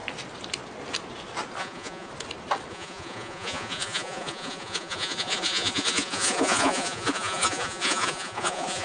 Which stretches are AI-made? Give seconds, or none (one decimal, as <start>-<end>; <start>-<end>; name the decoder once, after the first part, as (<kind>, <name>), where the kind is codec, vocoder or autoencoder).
1.6-2.1 (vocoder, Vocos); 2.7-8.8